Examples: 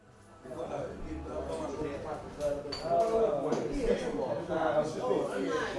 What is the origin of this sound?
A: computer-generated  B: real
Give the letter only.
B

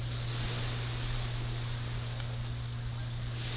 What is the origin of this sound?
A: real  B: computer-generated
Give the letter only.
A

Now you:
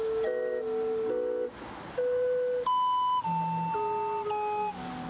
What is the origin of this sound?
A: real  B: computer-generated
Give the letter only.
A